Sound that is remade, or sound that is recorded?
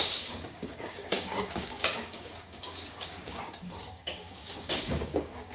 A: remade